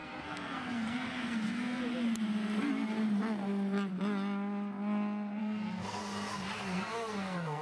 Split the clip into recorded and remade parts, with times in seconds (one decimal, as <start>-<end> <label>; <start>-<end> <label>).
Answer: 0.0-1.8 remade; 1.8-5.4 recorded; 5.4-6.0 remade; 6.0-6.6 recorded; 6.6-7.6 remade